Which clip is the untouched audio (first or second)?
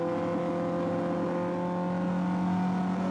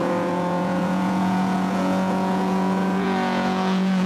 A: first